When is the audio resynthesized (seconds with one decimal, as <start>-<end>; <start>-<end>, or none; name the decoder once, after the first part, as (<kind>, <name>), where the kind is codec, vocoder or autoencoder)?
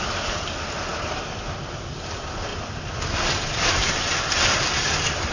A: none